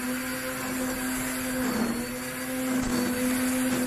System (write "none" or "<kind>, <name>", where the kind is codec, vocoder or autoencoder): none